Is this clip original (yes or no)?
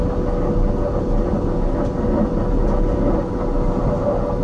yes